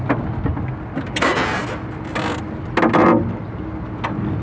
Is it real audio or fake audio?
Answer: real